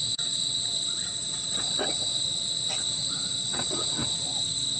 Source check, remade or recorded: remade